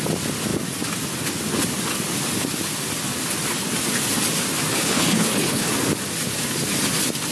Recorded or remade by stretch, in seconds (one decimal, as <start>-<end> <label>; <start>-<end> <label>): 0.0-4.7 recorded; 4.7-5.7 remade; 5.7-7.3 recorded